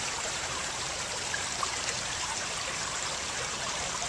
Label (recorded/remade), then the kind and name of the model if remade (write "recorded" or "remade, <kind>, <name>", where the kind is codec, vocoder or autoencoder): remade, vocoder, BigVGAN v2